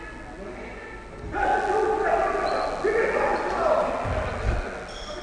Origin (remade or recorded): recorded